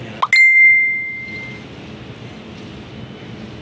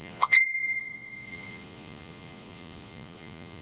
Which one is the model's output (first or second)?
second